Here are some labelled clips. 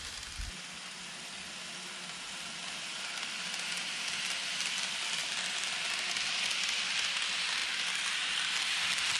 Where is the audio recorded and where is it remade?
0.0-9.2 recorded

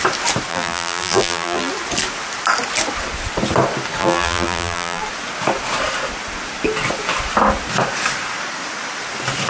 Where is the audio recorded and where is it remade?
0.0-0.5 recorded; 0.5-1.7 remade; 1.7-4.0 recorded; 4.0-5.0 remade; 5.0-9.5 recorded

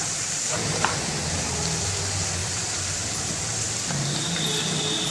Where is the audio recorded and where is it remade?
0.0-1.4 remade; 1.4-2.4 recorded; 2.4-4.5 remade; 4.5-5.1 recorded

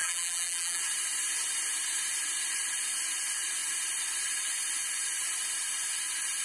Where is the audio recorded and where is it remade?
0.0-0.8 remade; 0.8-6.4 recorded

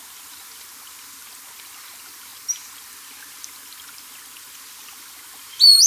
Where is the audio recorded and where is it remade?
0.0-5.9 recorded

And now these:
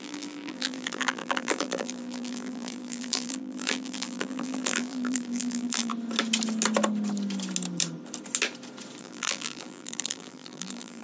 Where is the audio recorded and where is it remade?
0.0-5.9 remade; 5.9-9.0 recorded; 9.0-11.0 remade

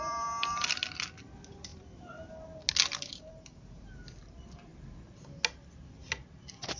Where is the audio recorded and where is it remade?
0.0-1.7 recorded; 1.7-2.3 remade; 2.3-2.9 recorded; 2.9-4.0 remade; 4.0-6.8 recorded

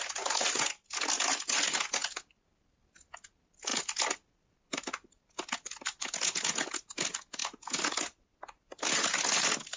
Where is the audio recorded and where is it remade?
0.0-9.8 recorded